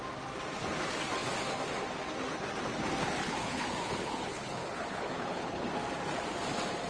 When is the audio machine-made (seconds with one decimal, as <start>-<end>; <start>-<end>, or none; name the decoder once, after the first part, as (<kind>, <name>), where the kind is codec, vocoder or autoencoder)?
3.0-5.7 (codec, HILCodec)